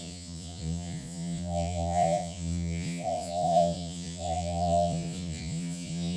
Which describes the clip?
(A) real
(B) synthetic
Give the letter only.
B